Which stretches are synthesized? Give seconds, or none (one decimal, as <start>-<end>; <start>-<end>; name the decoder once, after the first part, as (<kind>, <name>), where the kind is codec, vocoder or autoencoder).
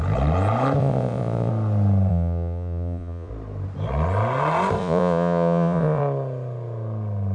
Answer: 0.8-1.5 (vocoder, Vocos); 2.1-3.3; 4.8-6.0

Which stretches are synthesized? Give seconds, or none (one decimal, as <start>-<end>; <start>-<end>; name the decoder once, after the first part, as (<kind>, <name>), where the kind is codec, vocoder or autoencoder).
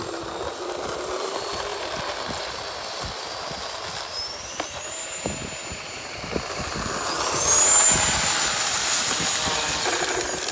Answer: none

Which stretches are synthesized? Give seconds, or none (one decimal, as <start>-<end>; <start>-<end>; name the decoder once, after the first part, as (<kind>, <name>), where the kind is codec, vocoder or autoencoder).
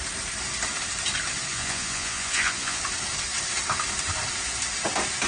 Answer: 1.5-2.8 (vocoder, Vocos)